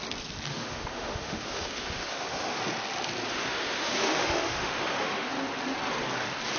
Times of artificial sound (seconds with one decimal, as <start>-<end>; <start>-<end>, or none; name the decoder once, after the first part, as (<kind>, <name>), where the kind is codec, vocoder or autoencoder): 0.5-2.6 (autoencoder, DAC-VAE); 3.3-5.3